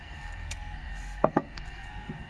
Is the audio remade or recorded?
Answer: remade